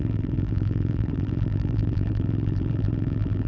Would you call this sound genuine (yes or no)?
no